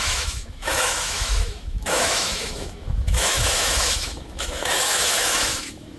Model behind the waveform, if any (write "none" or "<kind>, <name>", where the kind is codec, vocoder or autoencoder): autoencoder, DAC-VAE